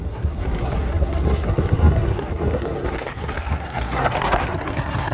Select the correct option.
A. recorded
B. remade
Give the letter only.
B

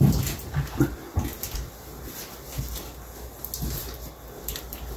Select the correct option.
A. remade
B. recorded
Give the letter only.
B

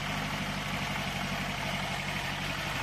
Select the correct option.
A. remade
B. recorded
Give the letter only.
B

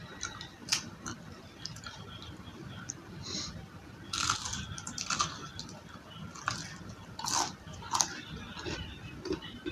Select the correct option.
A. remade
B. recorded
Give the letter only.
A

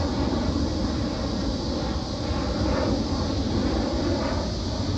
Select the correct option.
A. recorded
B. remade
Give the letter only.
A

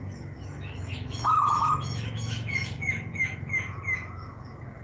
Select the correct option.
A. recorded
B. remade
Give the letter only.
B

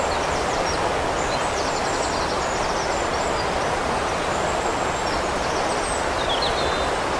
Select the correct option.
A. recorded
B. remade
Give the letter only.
A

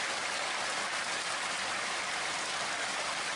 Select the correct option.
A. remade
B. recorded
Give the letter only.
B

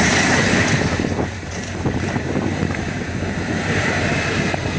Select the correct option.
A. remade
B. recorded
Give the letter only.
A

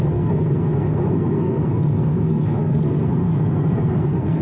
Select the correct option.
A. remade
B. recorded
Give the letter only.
A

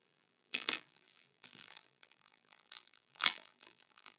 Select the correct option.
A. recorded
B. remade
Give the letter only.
B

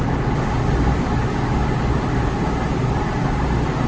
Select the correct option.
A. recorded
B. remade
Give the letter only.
A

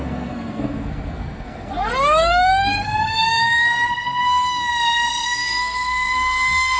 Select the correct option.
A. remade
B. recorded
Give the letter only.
A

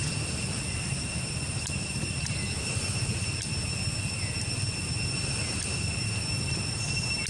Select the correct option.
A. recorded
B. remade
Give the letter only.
A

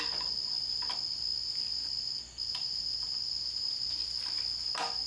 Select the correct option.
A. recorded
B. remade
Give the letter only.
A